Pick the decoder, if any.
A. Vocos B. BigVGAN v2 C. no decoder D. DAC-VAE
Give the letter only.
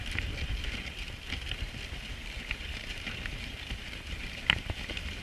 C